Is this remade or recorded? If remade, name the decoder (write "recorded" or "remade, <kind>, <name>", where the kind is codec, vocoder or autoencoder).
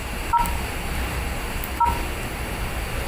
recorded